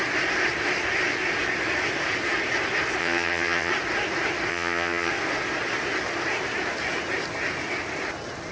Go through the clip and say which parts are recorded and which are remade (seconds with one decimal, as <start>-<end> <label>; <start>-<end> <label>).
0.0-3.0 recorded; 3.0-3.7 remade; 3.7-4.5 recorded; 4.5-5.1 remade; 5.1-8.5 recorded